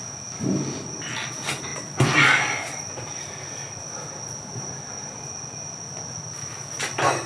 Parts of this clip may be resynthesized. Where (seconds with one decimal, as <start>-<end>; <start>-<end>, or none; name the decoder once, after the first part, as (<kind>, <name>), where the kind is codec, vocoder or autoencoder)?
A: none